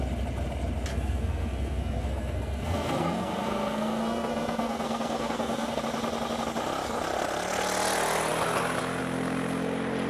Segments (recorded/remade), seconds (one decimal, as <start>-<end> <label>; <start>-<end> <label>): 0.0-0.9 recorded; 0.9-5.8 remade; 5.8-10.1 recorded